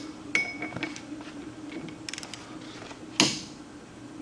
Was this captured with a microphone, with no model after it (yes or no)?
yes